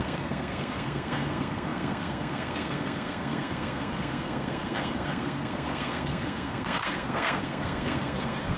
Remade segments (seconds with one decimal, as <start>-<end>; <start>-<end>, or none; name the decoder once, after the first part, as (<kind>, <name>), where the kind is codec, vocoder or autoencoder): 0.0-8.6 (codec, SNAC)